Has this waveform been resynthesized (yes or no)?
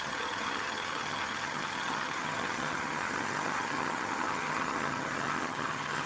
yes